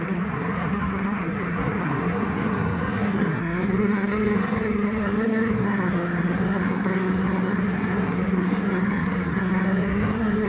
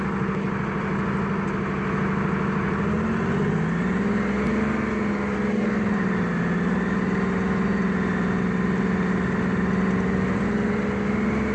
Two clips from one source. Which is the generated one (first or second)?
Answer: first